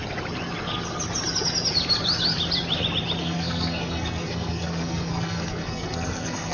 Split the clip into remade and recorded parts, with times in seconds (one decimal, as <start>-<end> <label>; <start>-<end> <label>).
0.0-3.2 recorded; 3.2-6.5 remade